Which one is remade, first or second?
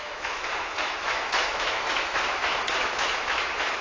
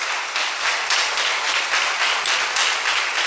first